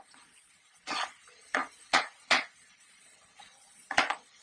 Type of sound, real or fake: fake